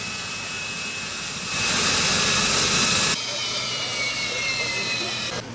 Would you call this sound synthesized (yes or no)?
yes